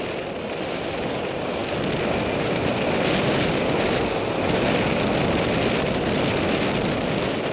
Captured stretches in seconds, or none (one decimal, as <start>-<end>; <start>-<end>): 0.0-7.5